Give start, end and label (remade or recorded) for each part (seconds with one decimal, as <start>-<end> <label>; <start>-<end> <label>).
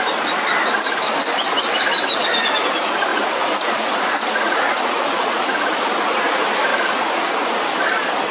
0.0-3.1 recorded; 3.1-6.2 remade; 6.2-6.7 recorded; 6.7-7.6 remade; 7.6-8.3 recorded